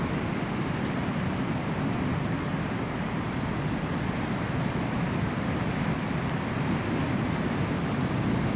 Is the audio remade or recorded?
recorded